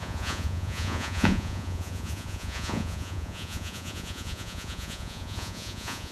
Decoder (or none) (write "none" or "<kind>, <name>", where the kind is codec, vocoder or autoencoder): vocoder, Vocos